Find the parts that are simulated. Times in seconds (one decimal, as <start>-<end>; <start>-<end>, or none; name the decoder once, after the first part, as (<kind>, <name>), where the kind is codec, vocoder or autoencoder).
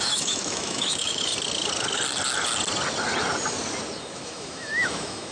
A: 0.0-1.3 (autoencoder, DAC-VAE); 4.0-5.3